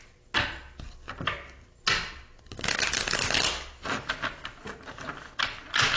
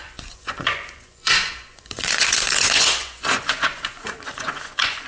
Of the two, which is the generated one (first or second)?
second